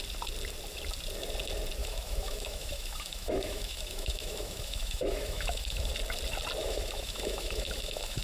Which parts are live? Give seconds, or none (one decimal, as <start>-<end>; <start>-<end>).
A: 0.0-1.8; 5.9-6.6